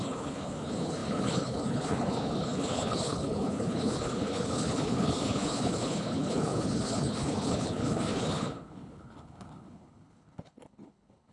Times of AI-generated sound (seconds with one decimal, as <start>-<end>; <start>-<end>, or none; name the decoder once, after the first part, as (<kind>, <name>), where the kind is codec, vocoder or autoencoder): 0.0-11.3 (codec, HILCodec)